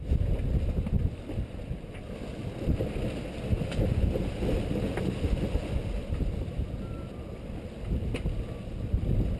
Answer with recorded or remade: recorded